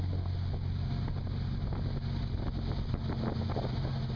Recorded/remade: recorded